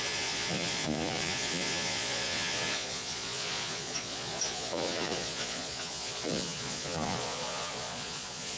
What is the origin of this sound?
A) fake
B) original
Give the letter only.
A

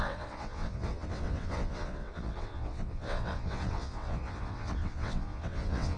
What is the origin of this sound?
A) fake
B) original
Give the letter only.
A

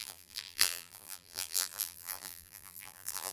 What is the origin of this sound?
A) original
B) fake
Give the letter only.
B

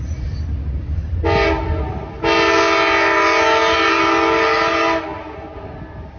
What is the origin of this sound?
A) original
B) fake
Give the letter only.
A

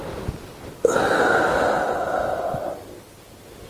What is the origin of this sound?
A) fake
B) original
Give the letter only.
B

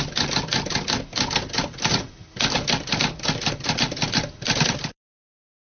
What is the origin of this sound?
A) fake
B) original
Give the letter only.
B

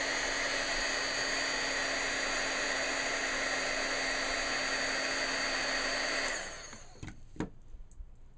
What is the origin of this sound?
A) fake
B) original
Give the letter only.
B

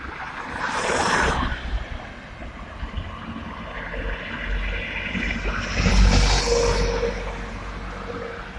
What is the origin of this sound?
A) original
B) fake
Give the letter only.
A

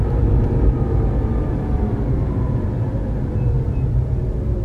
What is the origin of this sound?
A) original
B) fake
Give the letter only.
A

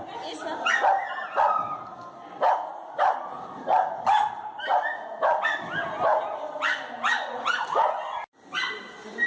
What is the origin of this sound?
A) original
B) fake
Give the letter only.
A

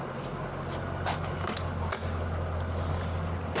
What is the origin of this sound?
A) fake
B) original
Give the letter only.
B